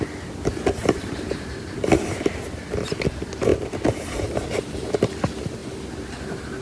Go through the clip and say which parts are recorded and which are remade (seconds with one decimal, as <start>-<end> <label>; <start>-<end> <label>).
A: 0.0-0.8 recorded; 0.8-2.0 remade; 2.0-6.6 recorded